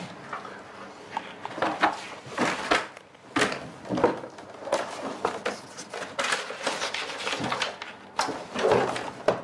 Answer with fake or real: real